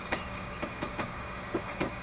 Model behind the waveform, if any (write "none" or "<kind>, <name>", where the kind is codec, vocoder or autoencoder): codec, DAC